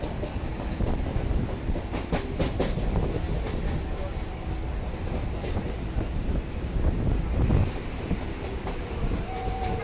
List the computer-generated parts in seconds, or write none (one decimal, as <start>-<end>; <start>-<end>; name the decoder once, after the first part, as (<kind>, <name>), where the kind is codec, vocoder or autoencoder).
7.6-9.8 (vocoder, BigVGAN v2)

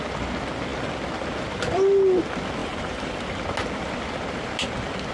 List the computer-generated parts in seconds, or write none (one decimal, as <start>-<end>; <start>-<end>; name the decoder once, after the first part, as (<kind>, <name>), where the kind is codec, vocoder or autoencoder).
2.6-3.4 (vocoder, BigVGAN v2)